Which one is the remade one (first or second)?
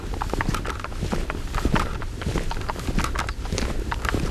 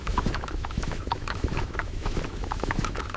second